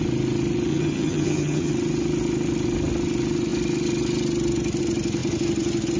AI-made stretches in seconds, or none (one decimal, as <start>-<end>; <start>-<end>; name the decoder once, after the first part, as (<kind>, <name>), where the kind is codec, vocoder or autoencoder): 0.7-1.7 (vocoder, HiFi-GAN)